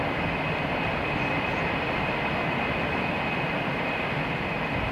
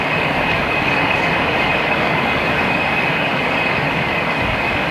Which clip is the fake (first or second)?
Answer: second